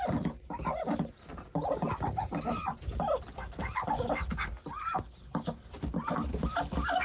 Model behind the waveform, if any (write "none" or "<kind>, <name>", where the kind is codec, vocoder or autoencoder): none